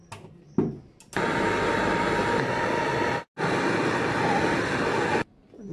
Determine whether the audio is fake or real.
real